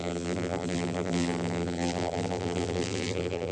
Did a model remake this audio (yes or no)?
yes